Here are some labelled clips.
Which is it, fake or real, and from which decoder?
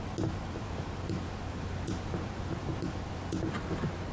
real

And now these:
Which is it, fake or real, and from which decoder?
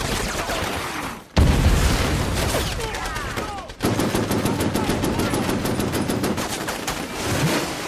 real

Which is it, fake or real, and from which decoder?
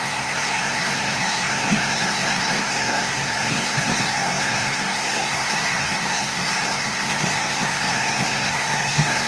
fake, codec, SNAC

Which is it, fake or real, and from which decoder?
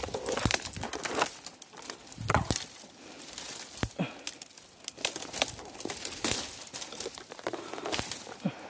real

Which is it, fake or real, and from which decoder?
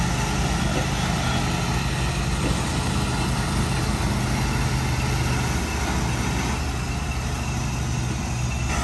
real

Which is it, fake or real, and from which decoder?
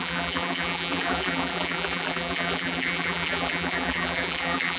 fake, vocoder, BigVGAN v2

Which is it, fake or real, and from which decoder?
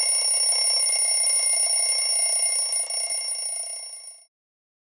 real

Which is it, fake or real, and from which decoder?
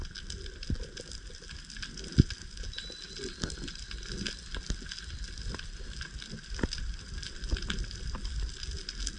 real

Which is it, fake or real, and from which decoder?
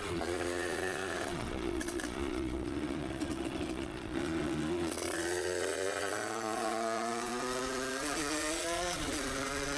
fake, vocoder, Vocos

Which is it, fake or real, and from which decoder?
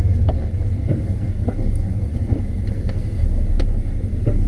fake, codec, SNAC